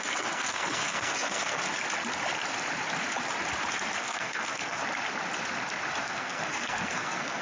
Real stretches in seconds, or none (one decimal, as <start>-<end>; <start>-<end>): 1.6-4.0; 4.8-6.0

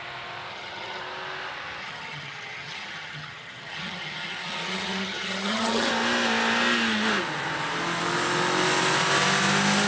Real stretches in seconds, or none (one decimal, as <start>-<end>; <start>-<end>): 0.0-0.5; 1.0-1.8; 5.9-9.9

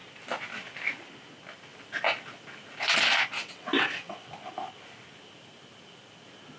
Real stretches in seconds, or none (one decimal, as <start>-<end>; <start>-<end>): 0.0-3.4; 4.3-6.6

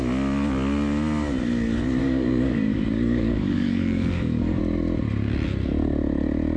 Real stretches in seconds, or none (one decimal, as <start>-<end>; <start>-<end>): 0.0-2.0; 4.6-6.6

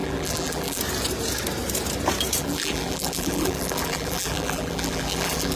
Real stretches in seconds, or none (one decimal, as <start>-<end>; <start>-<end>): 0.8-2.4

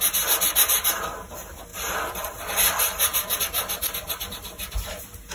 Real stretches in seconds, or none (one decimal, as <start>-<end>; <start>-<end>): 0.0-1.7

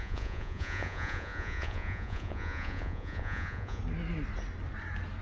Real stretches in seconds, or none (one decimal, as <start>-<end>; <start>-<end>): 3.8-5.2

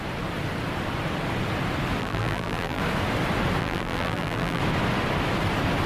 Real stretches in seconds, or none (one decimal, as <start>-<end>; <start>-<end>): 0.0-2.0; 2.8-3.6; 4.6-5.9